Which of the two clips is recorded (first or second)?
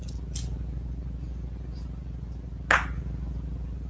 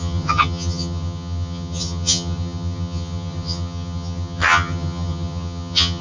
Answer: first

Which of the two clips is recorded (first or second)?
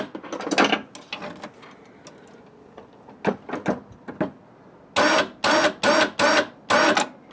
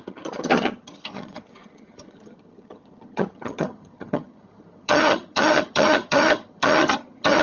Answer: first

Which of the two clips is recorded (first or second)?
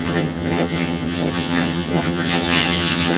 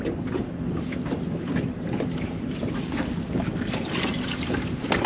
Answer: second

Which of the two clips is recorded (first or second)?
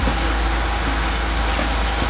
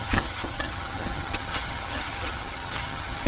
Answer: first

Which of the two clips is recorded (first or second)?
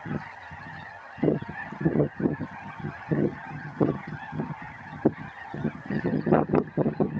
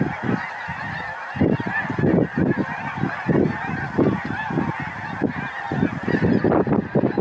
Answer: second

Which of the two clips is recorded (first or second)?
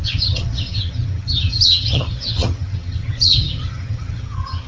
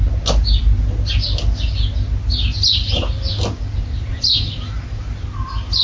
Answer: second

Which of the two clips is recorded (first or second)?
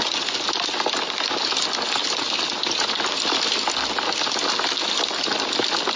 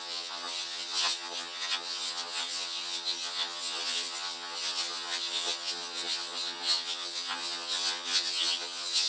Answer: first